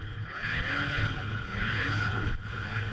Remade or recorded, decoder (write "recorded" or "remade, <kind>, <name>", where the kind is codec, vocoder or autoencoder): remade, codec, HILCodec